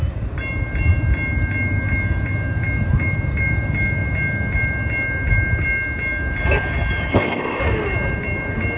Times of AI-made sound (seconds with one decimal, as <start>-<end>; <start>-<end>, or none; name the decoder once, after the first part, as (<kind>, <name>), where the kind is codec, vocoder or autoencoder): 7.1-7.6 (codec, ZipCodec)